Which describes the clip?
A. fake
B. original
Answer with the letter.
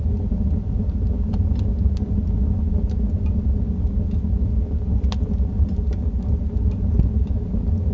B